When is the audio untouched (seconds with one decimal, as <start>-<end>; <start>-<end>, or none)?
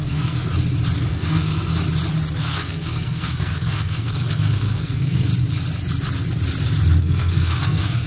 0.5-1.1; 1.7-2.4; 5.3-7.0